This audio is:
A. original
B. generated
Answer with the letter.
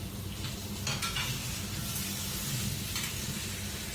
A